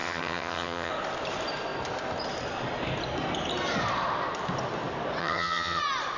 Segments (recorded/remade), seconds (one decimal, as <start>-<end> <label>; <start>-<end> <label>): 0.0-0.9 remade; 0.9-5.2 recorded; 5.2-5.8 remade; 5.8-6.2 recorded

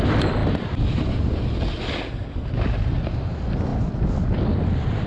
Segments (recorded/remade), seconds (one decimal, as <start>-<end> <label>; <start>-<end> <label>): 0.0-5.1 recorded

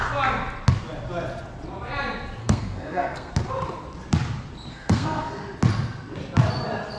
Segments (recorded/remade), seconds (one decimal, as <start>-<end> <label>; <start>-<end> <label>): 0.0-2.4 recorded; 2.4-3.3 remade; 3.3-4.7 recorded; 4.7-5.3 remade; 5.3-7.0 recorded

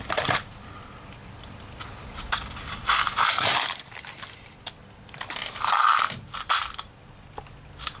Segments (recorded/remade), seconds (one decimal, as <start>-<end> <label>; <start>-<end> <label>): 0.0-8.0 remade

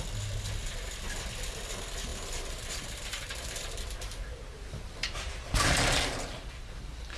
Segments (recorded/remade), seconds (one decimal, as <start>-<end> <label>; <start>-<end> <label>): 0.0-2.1 recorded; 2.1-6.4 remade; 6.4-7.2 recorded

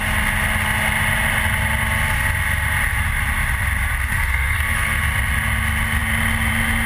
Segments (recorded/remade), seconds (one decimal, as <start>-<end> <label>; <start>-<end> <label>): 0.0-4.1 recorded; 4.1-5.0 remade; 5.0-6.9 recorded

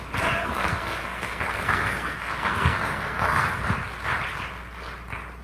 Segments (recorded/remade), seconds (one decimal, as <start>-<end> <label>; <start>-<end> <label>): 0.0-0.4 recorded; 0.4-3.6 remade; 3.6-5.4 recorded